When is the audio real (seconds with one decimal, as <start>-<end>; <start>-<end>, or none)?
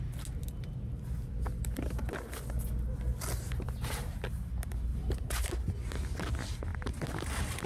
0.0-4.9; 5.5-6.7; 7.3-7.7